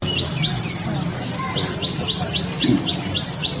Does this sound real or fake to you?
real